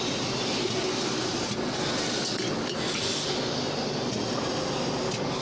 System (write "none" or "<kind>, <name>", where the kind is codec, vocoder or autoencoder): none